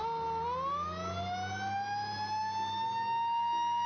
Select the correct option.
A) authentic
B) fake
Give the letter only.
A